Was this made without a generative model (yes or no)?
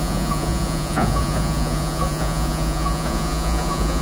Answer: no